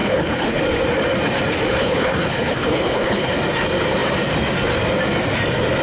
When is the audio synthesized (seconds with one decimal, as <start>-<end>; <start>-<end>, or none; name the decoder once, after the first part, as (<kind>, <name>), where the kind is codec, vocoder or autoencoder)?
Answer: 0.0-0.6 (codec, HILCodec); 1.7-3.3